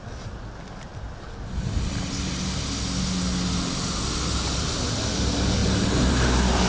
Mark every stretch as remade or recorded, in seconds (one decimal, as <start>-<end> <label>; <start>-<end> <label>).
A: 0.0-6.7 recorded